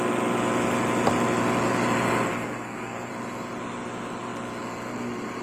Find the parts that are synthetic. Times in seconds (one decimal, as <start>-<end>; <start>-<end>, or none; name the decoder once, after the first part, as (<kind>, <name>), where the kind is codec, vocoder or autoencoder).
2.3-3.1 (codec, SNAC)